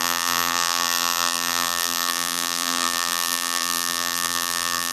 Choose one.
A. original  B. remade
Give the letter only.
B